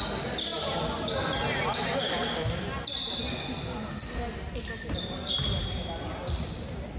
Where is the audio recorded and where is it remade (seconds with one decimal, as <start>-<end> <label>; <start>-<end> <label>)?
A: 0.0-7.0 recorded